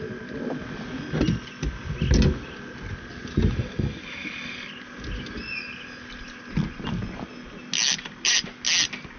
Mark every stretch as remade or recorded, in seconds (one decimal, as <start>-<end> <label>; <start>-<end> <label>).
0.0-9.2 recorded